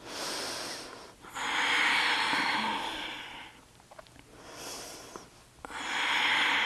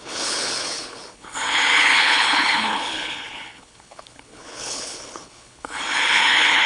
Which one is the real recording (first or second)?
first